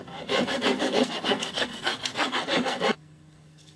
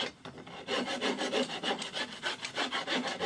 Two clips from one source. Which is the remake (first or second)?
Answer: first